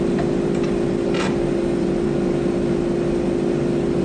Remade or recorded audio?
recorded